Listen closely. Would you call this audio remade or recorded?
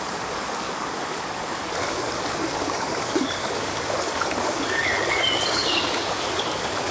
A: remade